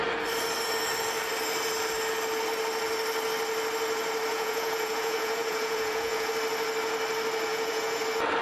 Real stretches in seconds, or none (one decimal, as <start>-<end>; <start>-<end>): 0.0-4.3; 6.3-7.5; 8.0-8.4